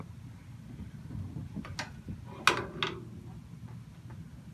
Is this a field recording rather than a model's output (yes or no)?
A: yes